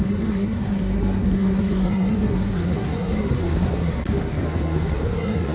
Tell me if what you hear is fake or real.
fake